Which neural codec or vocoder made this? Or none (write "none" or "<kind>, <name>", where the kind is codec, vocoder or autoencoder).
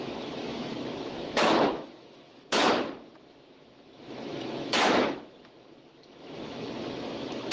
autoencoder, DAC-VAE